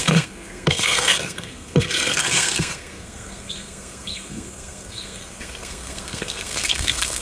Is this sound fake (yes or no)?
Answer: yes